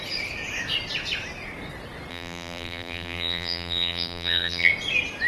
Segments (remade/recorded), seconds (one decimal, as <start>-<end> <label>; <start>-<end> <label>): 0.0-2.1 recorded; 2.1-4.7 remade; 4.7-5.3 recorded